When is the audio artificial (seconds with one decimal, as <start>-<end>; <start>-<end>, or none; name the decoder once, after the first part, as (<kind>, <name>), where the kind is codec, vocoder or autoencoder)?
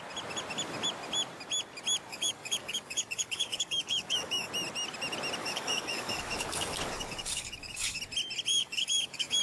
2.1-4.5 (codec, DAC); 5.4-8.0; 8.5-9.4